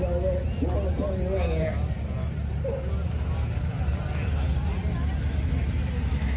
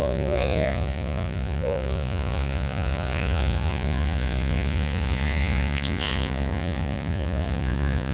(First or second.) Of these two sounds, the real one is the first